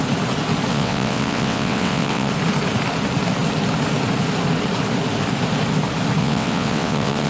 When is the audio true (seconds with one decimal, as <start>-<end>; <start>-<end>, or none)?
0.0-0.7; 2.3-6.2